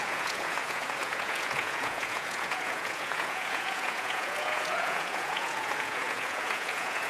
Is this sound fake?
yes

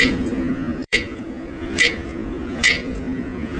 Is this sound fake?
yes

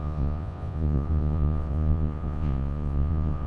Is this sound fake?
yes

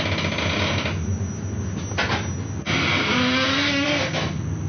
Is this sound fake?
no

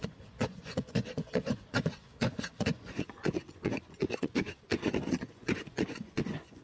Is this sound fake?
yes